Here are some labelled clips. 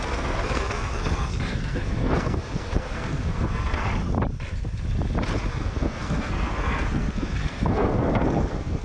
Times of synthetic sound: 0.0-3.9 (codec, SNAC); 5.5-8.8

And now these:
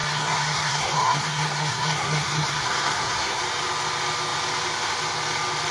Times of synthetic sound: 0.0-3.4 (codec, SNAC)

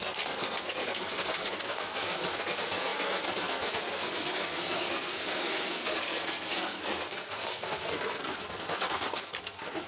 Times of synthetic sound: 0.0-9.9 (codec, SNAC)

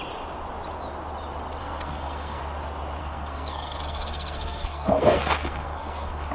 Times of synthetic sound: 1.6-2.4 (codec, SNAC); 3.0-6.3